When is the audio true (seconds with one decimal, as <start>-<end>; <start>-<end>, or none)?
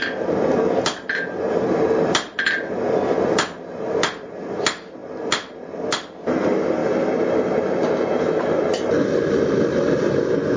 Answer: 0.0-10.6